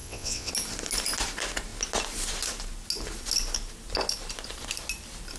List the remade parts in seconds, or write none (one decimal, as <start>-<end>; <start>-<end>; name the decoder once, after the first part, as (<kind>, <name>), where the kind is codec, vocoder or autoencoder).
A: 0.0-0.5 (vocoder, WaveNeXt)